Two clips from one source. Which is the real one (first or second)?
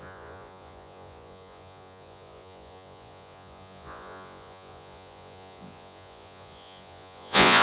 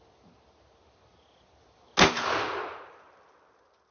second